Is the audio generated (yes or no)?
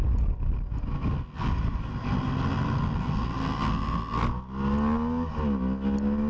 no